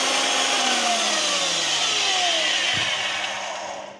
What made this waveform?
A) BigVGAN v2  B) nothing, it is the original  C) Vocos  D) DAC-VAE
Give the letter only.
B